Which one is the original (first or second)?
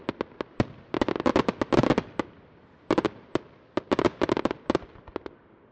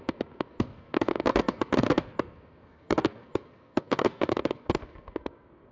first